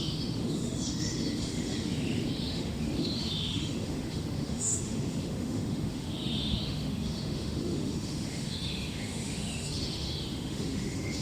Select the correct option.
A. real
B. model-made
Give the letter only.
B